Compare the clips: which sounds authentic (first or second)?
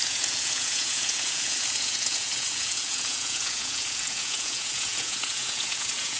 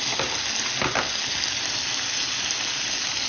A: second